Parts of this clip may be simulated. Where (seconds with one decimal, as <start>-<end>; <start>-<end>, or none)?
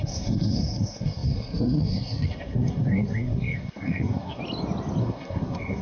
0.0-4.4; 5.0-5.8